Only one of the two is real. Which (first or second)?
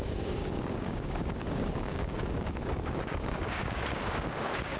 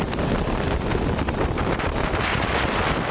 second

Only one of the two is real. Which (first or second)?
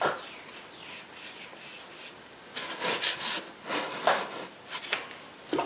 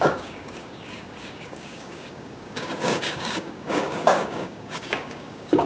first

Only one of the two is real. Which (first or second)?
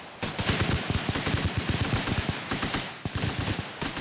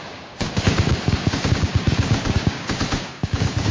first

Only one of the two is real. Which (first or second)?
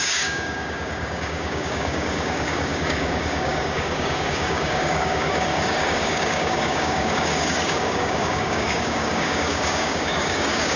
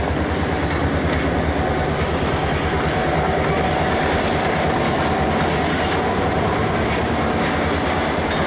second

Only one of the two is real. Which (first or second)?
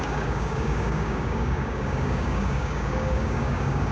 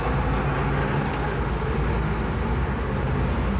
second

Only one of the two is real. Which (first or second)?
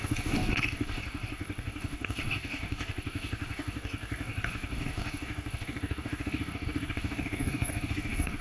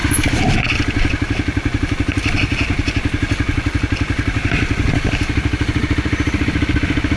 second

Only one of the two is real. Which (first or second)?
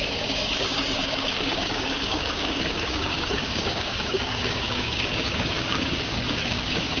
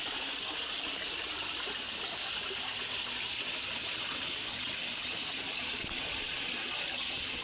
second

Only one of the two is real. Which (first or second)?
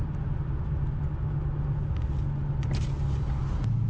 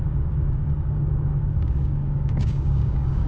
first